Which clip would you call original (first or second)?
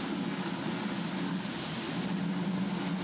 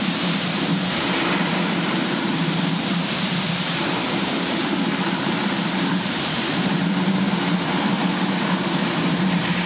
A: first